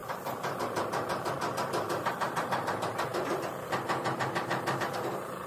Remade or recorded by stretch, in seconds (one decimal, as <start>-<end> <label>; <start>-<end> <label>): 0.0-2.1 recorded; 2.1-5.5 remade